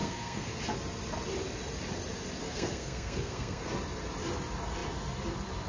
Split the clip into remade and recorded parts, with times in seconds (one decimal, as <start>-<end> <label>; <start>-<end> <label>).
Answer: 0.0-0.6 remade; 0.6-2.4 recorded; 2.4-3.7 remade; 3.7-5.7 recorded